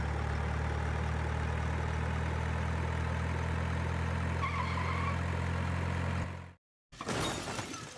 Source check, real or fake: real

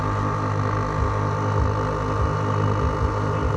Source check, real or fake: real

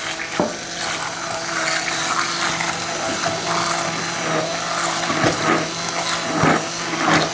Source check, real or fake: real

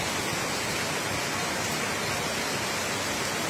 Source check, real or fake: real